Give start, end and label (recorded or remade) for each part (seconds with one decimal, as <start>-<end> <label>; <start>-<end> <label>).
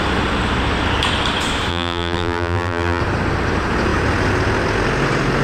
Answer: 0.0-1.7 recorded; 1.7-3.0 remade; 3.0-5.4 recorded